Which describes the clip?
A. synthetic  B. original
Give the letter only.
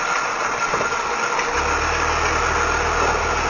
B